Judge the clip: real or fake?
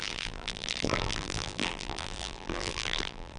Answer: fake